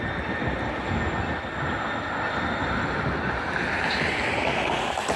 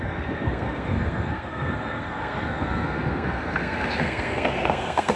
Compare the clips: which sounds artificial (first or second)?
second